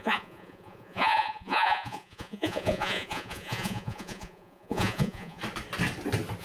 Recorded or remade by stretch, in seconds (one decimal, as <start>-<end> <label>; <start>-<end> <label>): 0.0-5.4 remade; 5.4-6.4 recorded